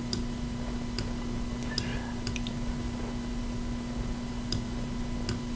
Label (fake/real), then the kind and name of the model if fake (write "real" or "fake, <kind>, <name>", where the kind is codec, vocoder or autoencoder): real